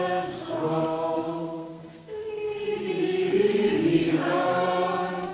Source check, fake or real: fake